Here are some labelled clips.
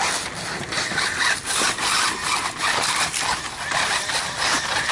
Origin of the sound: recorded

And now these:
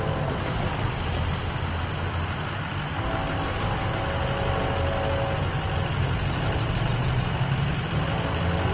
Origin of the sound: recorded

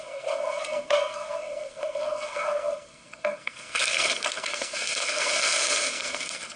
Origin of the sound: remade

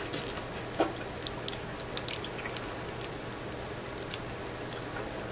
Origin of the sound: recorded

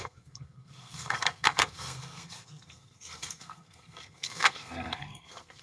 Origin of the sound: remade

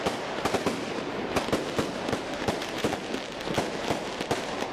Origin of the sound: recorded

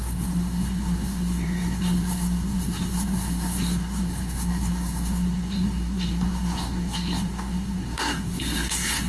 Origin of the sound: remade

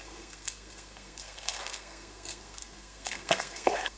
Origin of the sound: remade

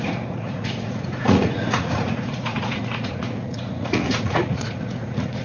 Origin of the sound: remade